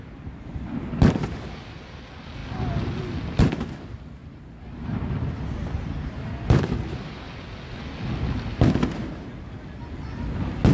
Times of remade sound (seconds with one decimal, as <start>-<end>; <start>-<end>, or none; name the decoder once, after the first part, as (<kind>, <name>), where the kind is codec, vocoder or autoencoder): none